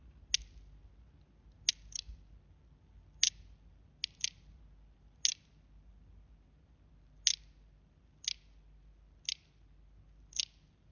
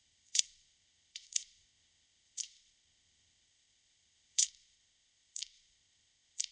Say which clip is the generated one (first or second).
second